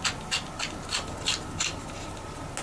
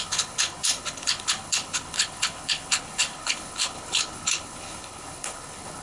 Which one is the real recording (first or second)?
first